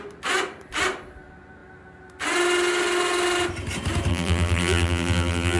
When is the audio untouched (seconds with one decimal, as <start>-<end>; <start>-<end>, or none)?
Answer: 0.0-4.1